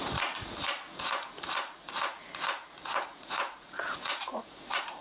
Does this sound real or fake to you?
fake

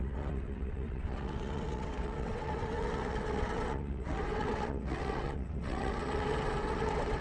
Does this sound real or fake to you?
fake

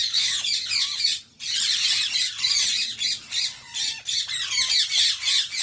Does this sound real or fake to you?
fake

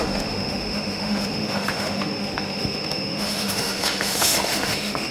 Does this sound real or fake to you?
fake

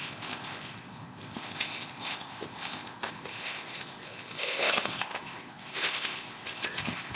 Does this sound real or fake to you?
fake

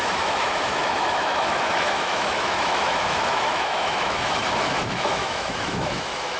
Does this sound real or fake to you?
fake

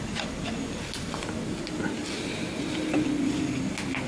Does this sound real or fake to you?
real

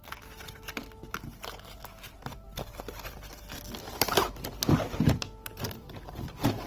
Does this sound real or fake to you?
real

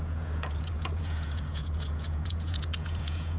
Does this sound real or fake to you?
fake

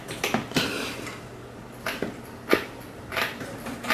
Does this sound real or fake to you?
real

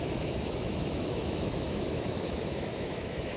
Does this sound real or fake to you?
fake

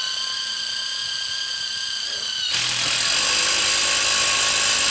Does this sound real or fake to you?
real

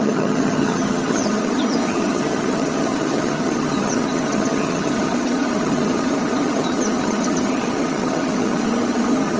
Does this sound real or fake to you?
fake